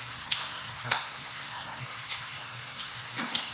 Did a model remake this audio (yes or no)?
yes